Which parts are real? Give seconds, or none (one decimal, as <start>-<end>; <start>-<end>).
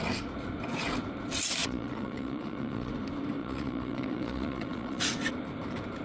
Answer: 0.0-1.6; 2.9-3.4; 5.0-6.0